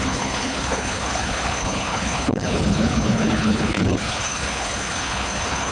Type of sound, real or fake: fake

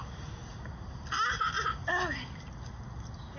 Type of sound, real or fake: real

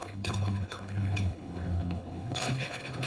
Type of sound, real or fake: fake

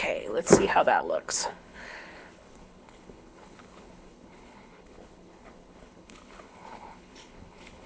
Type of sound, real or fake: fake